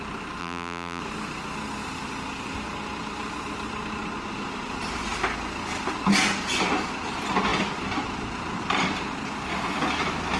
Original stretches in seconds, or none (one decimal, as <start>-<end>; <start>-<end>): 0.0-0.4; 1.0-10.4